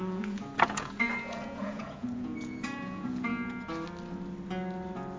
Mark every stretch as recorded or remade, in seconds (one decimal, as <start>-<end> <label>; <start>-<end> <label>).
0.0-3.3 remade; 3.3-5.2 recorded

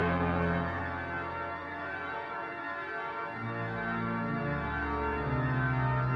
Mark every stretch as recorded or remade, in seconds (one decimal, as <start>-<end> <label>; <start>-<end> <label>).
0.0-0.8 remade; 0.8-1.6 recorded; 1.6-2.6 remade; 2.6-6.2 recorded

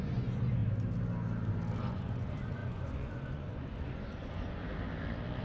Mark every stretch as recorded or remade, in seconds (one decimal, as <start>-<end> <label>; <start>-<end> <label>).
0.0-0.6 remade; 0.6-1.8 recorded; 1.8-4.6 remade; 4.6-5.4 recorded

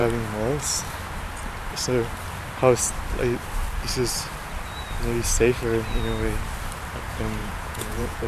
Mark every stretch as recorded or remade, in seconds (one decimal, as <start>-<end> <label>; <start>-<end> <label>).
0.0-7.4 recorded; 7.4-8.3 remade

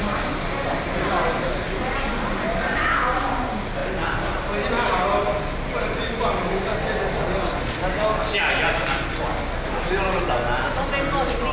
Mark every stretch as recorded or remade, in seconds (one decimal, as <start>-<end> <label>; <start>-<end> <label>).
0.0-11.5 recorded

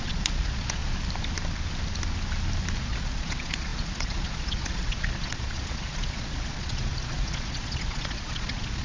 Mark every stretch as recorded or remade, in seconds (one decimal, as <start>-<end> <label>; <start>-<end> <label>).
0.0-0.8 remade; 0.8-2.8 recorded; 2.8-8.8 remade

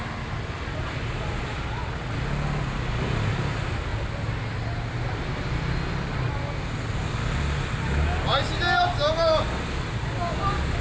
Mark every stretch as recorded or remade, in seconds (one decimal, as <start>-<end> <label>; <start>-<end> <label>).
0.0-10.8 recorded

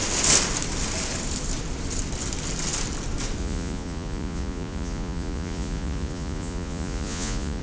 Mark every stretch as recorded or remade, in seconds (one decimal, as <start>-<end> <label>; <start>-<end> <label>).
0.0-3.4 recorded; 3.4-7.6 remade